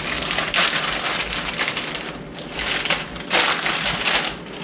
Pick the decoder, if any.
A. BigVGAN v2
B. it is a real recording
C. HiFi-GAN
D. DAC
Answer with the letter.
B